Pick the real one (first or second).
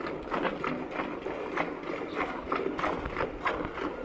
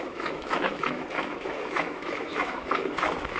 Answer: first